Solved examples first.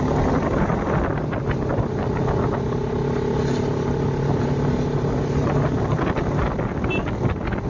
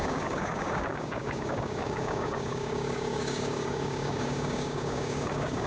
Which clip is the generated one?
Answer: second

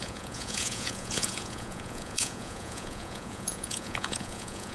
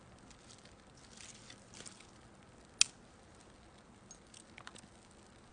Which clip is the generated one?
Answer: first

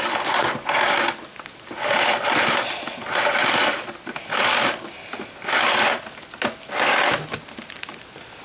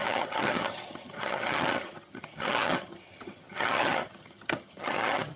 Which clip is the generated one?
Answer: second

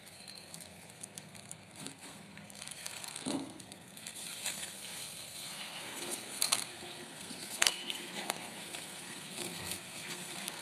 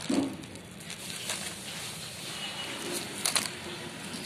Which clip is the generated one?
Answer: first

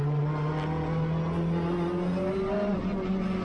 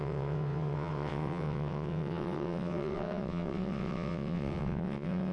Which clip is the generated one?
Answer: second